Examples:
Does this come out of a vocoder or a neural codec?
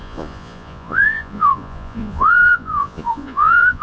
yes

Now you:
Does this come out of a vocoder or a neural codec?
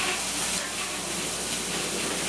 no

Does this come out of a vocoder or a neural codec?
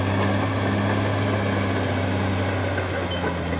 no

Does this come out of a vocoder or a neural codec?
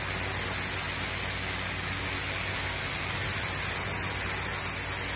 no